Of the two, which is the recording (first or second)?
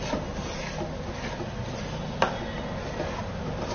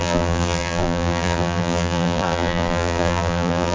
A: first